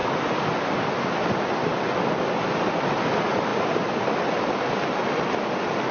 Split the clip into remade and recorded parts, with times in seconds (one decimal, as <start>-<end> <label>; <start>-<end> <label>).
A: 0.0-5.9 recorded

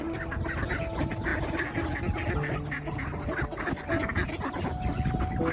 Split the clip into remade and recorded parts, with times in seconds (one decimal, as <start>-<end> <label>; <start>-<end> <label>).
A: 0.0-5.5 recorded

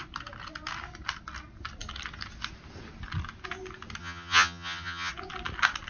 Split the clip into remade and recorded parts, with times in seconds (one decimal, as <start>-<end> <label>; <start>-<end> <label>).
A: 0.0-4.0 recorded; 4.0-5.1 remade; 5.1-5.9 recorded

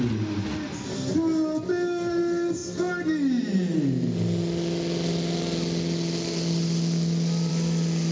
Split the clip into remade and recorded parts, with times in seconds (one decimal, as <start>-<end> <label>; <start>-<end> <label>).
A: 0.0-8.1 recorded

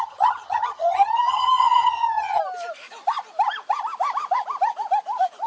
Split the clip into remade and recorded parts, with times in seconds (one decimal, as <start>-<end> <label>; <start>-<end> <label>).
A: 0.0-2.4 remade; 2.4-5.5 recorded

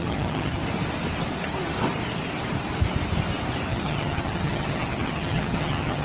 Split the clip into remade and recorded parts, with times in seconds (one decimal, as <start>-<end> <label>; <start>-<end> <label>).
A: 0.0-0.6 remade; 0.6-3.7 recorded; 3.7-6.0 remade

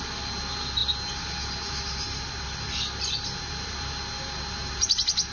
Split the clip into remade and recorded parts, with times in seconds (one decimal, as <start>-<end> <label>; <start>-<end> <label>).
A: 0.0-5.3 recorded

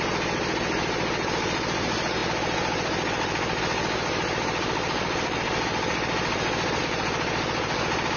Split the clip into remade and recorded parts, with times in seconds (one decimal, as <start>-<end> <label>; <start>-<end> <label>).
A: 0.0-8.2 recorded